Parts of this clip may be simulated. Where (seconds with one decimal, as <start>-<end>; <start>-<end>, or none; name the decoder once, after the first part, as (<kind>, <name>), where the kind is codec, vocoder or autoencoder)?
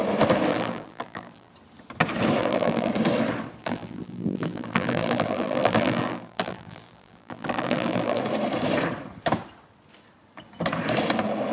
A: 0.5-1.5 (vocoder, BigVGAN v2); 2.4-2.9; 3.6-8.2